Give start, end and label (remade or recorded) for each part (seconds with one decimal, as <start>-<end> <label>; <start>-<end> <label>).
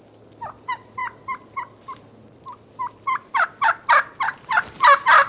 0.0-5.3 recorded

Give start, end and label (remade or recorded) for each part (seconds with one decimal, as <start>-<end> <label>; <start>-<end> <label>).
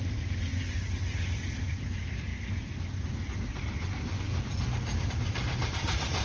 0.0-0.5 remade; 0.5-1.7 recorded; 1.7-2.3 remade; 2.3-5.1 recorded; 5.1-6.2 remade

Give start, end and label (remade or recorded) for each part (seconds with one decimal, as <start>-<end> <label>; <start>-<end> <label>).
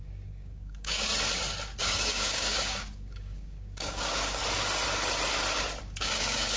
0.0-1.1 remade; 1.1-1.8 recorded; 1.8-4.4 remade; 4.4-5.8 recorded; 5.8-6.6 remade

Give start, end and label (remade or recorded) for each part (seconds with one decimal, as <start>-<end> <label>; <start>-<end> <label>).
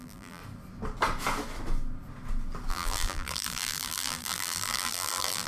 0.0-0.4 remade; 0.4-2.7 recorded; 2.7-5.5 remade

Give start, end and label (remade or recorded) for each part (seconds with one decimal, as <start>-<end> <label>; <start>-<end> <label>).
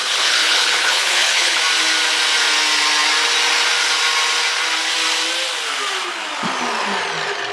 0.0-1.6 remade; 1.6-7.5 recorded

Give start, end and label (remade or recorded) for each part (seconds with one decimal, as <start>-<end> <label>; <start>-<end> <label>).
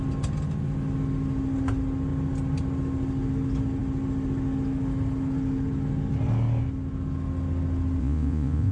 0.0-8.0 recorded; 8.0-8.7 remade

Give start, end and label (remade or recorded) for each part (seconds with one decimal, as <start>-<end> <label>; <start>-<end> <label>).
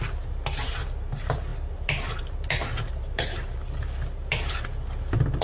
0.0-5.4 recorded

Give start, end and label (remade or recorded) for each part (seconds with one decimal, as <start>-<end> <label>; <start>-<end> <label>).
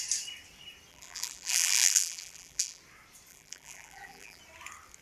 0.0-0.9 recorded; 0.9-2.8 remade; 2.8-3.3 recorded; 3.3-4.4 remade; 4.4-5.0 recorded